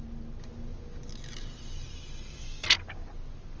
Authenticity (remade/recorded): recorded